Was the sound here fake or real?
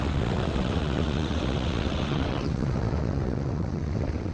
fake